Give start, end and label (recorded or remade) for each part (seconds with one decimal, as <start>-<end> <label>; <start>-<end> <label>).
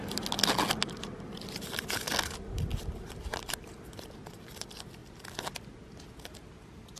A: 0.0-3.3 recorded; 3.3-4.1 remade; 4.1-5.0 recorded; 5.0-5.6 remade; 5.6-7.0 recorded